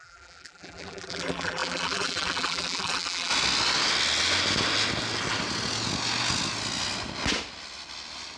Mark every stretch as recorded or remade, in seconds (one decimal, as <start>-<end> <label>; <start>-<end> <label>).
0.0-3.3 remade; 3.3-8.4 recorded